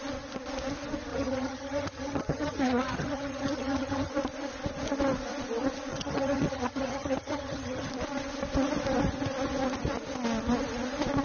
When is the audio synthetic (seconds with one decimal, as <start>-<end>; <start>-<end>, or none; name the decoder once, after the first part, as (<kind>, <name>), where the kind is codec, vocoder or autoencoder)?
1.1-4.1 (vocoder, HiFi-GAN); 5.9-7.9

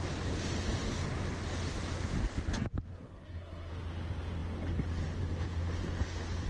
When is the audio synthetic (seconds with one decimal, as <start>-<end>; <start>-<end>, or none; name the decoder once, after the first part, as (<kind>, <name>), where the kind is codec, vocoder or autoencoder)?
2.9-3.7 (codec, SNAC)